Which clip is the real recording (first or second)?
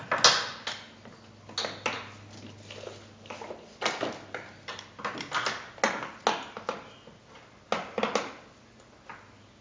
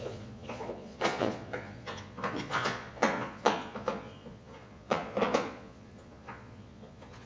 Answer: first